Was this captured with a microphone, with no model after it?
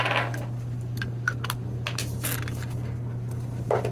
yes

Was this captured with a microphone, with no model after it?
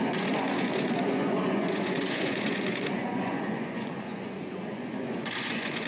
no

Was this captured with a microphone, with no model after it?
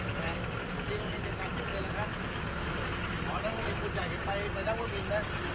yes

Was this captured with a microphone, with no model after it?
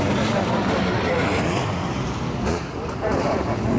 no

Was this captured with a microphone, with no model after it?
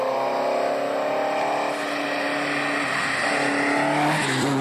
yes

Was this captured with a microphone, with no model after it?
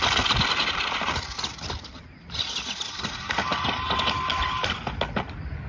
yes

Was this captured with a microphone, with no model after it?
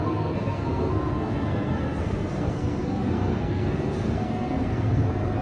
no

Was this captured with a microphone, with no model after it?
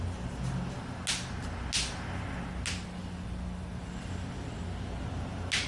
yes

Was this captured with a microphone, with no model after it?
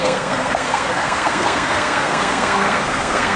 no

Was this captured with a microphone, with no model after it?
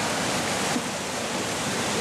yes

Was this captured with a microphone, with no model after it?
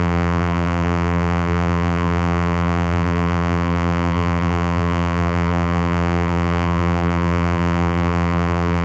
no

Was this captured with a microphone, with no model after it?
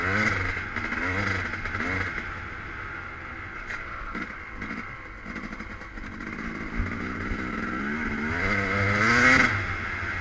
yes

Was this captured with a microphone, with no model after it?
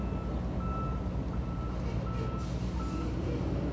yes